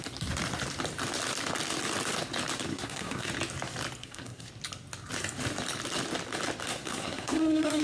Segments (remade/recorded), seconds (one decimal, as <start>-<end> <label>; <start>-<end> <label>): 0.0-2.7 recorded; 2.7-3.3 remade; 3.3-4.0 recorded; 4.0-4.5 remade; 4.5-6.7 recorded; 6.7-7.8 remade